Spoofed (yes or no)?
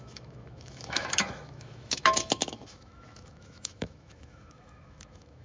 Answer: yes